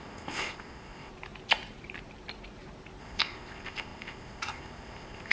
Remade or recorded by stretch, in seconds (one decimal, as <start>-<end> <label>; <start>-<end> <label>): 0.0-1.1 remade; 1.1-3.0 recorded; 3.0-5.3 remade